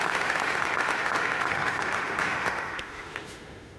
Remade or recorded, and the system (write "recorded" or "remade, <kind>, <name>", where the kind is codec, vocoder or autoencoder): remade, autoencoder, DAC-VAE